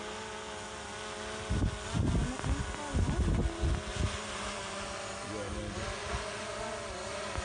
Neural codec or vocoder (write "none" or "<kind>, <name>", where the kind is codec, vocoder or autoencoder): none